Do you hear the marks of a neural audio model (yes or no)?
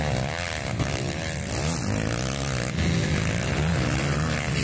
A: no